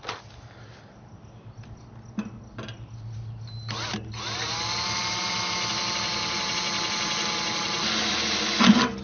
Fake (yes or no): no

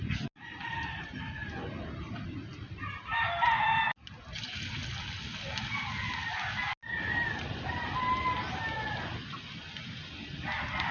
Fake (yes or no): no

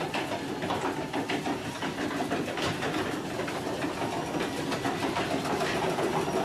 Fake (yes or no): no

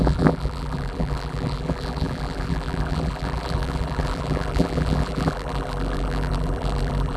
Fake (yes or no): yes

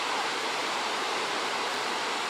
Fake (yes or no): yes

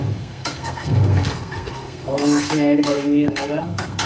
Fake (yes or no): yes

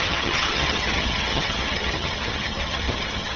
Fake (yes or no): yes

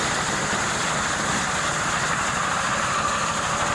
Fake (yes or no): no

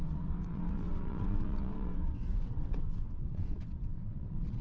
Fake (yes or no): yes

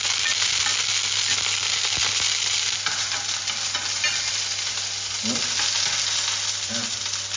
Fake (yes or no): no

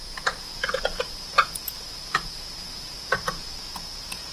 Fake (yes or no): yes